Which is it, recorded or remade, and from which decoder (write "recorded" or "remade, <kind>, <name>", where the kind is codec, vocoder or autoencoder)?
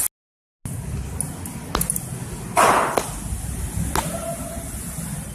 recorded